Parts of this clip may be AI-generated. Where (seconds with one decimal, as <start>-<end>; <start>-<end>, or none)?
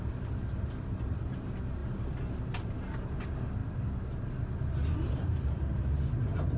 1.8-2.8